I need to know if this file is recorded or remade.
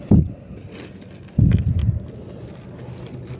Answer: recorded